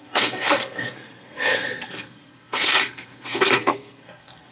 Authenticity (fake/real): fake